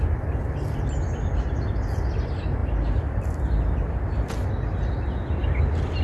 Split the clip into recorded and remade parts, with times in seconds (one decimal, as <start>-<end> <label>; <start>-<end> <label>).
0.0-6.0 recorded